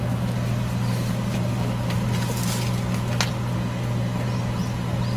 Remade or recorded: recorded